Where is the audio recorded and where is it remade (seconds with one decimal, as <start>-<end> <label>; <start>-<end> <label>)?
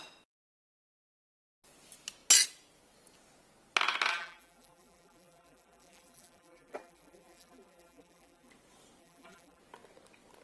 0.0-4.1 recorded; 4.1-8.5 remade; 8.5-9.0 recorded; 9.0-9.6 remade; 9.6-10.4 recorded